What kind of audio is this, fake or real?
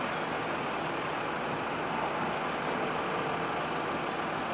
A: real